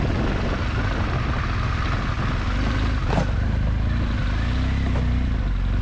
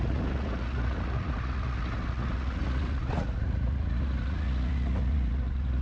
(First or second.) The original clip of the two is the first